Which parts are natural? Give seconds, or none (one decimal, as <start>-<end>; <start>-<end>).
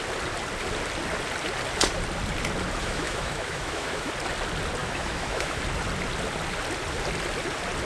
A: 0.0-2.8; 4.1-4.8; 5.6-7.9